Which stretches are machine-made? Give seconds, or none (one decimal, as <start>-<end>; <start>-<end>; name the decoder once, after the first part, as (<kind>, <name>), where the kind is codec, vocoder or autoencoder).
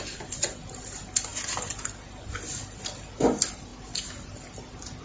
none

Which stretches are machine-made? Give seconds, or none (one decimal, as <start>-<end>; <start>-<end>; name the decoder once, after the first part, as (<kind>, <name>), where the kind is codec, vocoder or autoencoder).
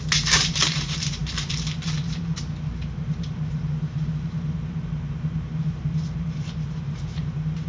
0.0-7.7 (vocoder, BigVGAN v2)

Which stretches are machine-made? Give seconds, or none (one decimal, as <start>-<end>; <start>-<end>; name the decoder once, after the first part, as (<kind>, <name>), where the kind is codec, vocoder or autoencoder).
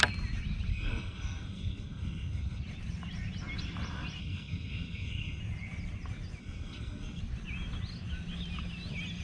0.7-2.6 (codec, SNAC); 4.2-5.4; 6.4-7.2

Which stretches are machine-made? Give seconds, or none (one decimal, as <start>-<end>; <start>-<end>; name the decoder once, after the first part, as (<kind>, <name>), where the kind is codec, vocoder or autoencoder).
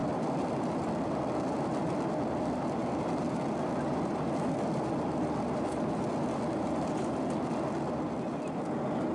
0.0-1.8 (vocoder, BigVGAN v2); 2.8-7.2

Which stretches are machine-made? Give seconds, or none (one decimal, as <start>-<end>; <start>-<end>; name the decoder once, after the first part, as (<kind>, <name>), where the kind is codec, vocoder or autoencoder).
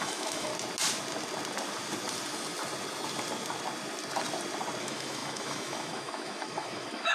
0.0-0.5 (autoencoder, DAC-VAE); 4.8-7.1